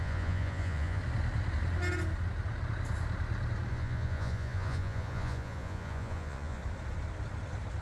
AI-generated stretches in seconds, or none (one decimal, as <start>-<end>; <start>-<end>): 0.0-1.0; 3.7-6.6